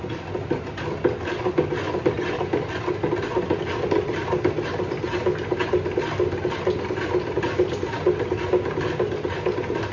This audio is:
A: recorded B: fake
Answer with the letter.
A